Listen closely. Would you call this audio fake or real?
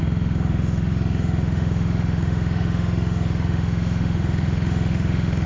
fake